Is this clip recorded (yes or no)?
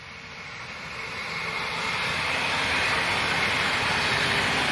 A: no